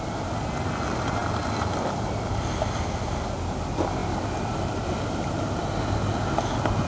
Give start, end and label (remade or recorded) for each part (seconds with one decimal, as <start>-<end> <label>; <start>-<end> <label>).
0.0-6.9 recorded